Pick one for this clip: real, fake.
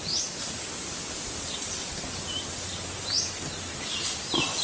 real